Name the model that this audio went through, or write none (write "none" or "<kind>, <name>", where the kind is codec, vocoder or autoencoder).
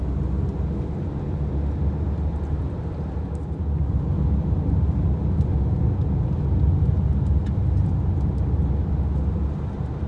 none